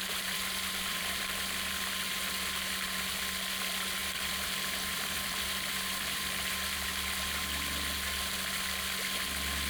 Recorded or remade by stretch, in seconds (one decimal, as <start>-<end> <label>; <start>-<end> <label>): 0.0-1.2 remade; 1.2-4.0 recorded; 4.0-6.2 remade; 6.2-9.7 recorded